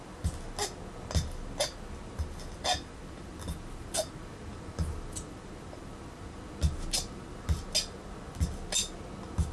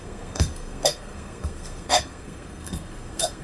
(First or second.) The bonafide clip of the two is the first